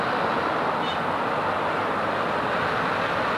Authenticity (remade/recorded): recorded